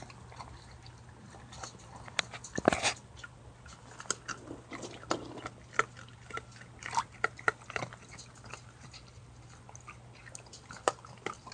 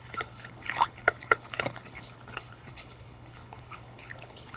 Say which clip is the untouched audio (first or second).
first